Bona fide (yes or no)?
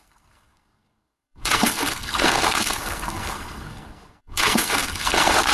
no